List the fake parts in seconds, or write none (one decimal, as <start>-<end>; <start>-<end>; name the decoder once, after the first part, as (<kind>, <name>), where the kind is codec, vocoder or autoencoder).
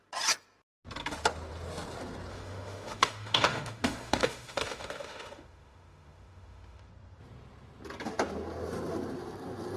2.3-6.9 (autoencoder, DAC-VAE)